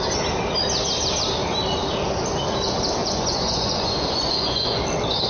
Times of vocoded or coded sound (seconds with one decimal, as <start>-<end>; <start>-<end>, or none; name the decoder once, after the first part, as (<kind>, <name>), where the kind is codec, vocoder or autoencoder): 3.0-4.8 (vocoder, Vocos)